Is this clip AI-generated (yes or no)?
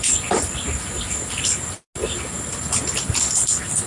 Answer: no